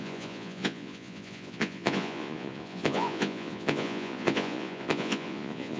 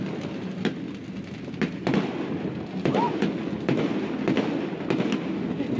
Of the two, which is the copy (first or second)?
first